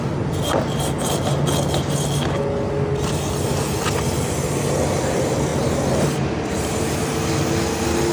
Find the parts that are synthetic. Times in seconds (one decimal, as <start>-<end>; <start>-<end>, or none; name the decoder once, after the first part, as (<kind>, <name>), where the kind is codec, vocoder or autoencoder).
5.5-6.7 (vocoder, BigVGAN v2)